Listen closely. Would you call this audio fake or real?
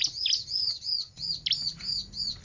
real